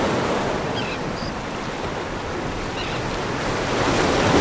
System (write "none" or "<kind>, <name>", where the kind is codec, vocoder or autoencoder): none